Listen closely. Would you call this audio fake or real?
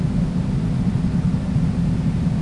real